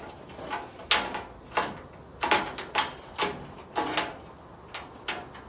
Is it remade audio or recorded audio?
recorded